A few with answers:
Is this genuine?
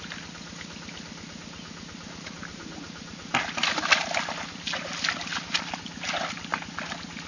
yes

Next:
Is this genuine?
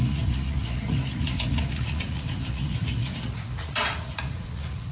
no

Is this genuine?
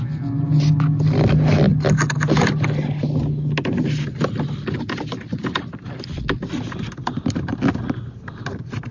yes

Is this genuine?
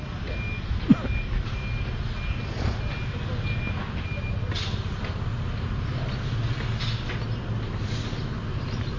yes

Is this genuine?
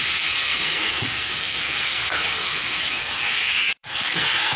no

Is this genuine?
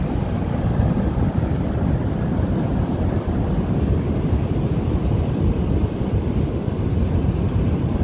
yes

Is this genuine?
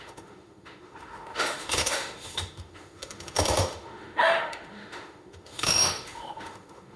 no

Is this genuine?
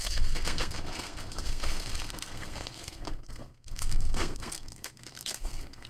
no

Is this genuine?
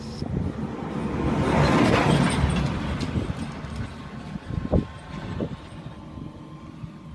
yes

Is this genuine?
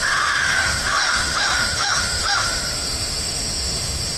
no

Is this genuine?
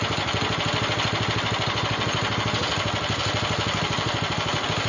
yes